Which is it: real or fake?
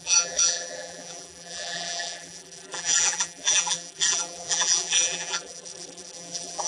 fake